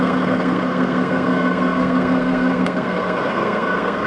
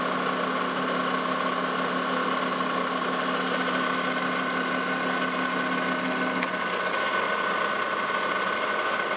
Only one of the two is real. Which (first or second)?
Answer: second